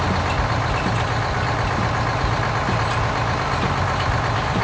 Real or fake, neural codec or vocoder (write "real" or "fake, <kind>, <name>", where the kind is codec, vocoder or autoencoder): real